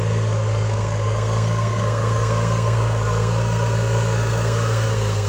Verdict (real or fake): fake